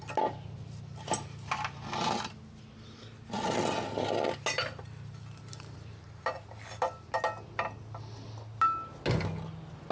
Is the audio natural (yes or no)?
yes